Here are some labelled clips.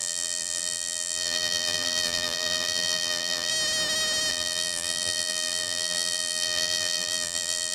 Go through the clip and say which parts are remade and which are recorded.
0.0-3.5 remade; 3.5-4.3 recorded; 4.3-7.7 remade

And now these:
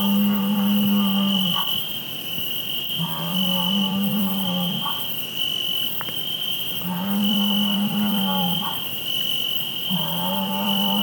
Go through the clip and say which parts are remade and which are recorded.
0.0-3.3 recorded; 3.3-6.6 remade; 6.6-7.2 recorded; 7.2-11.0 remade

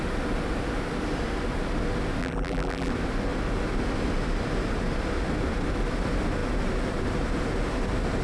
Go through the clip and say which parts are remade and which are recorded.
0.0-2.2 recorded; 2.2-2.9 remade; 2.9-8.2 recorded

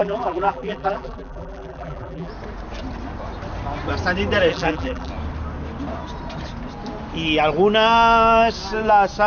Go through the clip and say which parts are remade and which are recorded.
0.0-2.3 remade; 2.3-4.5 recorded; 4.5-5.1 remade; 5.1-9.3 recorded

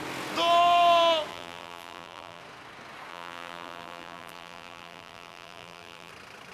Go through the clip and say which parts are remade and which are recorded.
0.0-1.3 recorded; 1.3-2.4 remade; 2.4-3.1 recorded; 3.1-6.1 remade; 6.1-6.5 recorded

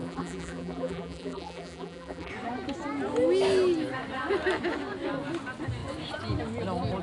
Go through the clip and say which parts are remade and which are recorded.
0.0-2.3 remade; 2.3-7.0 recorded

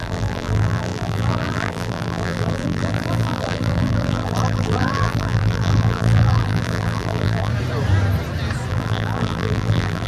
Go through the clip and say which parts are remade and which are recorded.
0.0-7.5 remade; 7.5-8.7 recorded; 8.7-10.1 remade